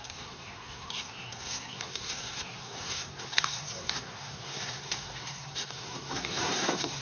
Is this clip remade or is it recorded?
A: remade